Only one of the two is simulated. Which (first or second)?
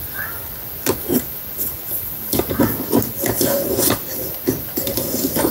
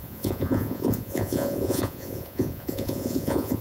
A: second